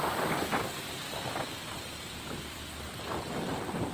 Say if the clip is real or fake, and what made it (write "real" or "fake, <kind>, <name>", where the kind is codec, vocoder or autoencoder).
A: fake, vocoder, BigVGAN v2